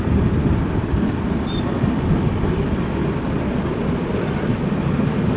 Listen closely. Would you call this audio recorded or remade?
remade